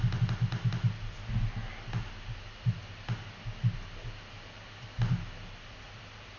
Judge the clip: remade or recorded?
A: recorded